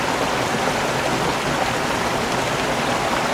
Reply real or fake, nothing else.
real